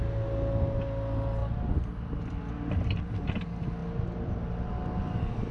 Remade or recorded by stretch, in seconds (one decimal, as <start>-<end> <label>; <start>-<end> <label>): 0.0-5.5 recorded